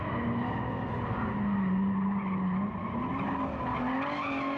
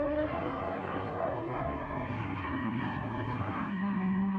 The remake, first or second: second